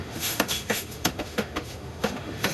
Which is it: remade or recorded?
remade